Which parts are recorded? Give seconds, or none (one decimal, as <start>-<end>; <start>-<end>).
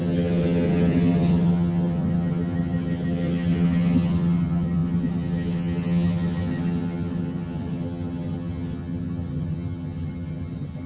none